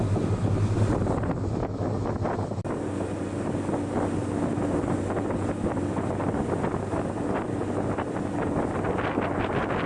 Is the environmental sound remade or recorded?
recorded